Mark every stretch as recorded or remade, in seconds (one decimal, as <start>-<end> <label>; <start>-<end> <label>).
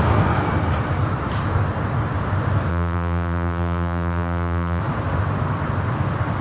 0.0-2.7 recorded; 2.7-4.8 remade; 4.8-6.4 recorded